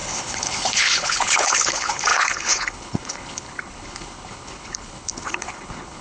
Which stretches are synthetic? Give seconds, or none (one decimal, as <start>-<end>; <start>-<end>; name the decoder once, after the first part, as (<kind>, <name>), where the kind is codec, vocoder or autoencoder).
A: 0.0-6.0 (codec, HILCodec)